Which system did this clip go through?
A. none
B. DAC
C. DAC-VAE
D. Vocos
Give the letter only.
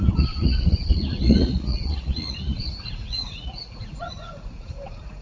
D